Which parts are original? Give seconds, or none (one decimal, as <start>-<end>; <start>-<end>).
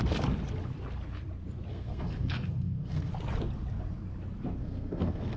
0.0-1.7; 3.1-4.6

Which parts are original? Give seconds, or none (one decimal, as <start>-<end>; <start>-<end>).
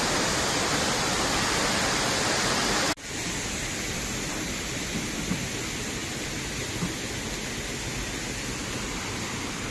0.0-9.7